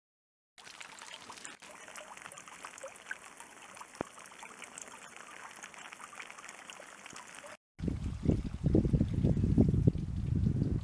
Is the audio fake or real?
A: real